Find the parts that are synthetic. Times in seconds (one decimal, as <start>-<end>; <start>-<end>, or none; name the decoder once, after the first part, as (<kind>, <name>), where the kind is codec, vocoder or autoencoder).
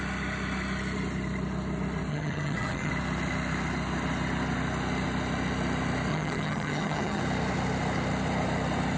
2.1-2.9 (vocoder, HiFi-GAN); 6.1-7.2